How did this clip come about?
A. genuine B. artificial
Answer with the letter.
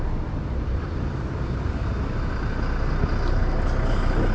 A